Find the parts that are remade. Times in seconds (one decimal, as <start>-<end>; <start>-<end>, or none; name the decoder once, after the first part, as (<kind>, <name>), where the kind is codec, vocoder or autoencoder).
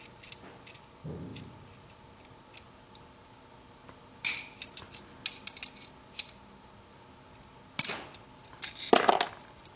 none